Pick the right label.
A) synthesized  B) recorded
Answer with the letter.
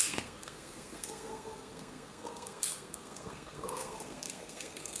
A